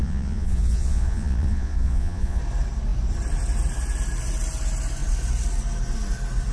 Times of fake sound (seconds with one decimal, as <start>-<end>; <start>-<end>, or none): 0.0-2.4